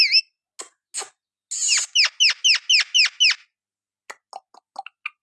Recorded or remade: recorded